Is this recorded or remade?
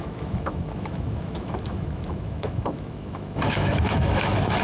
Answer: remade